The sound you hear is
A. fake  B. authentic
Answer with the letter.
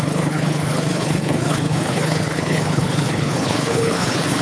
A